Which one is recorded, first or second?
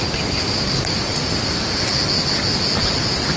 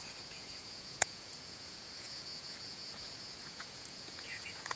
first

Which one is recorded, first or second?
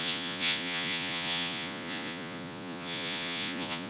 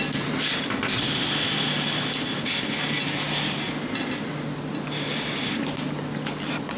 second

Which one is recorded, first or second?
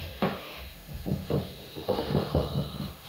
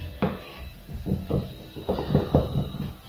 second